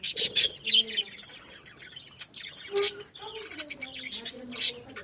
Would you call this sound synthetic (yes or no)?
no